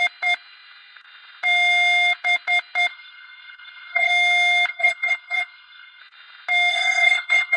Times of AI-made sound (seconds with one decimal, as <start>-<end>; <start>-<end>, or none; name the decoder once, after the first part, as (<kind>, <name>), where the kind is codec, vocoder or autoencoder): 2.9-4.1 (codec, SNAC); 4.7-6.0; 6.7-7.6